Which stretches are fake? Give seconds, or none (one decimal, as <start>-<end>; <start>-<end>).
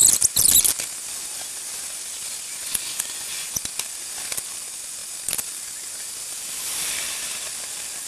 2.5-3.6